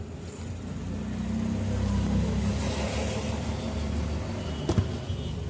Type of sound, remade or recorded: recorded